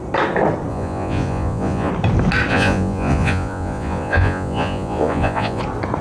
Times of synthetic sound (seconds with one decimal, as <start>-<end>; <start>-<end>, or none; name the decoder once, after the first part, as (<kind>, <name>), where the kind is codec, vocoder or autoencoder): 0.7-1.9 (vocoder, Vocos); 2.5-5.6